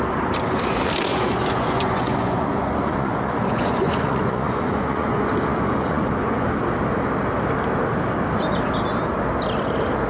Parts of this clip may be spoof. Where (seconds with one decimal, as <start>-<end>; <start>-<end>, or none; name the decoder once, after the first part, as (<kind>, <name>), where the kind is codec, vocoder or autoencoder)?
1.1-6.4 (vocoder, Vocos)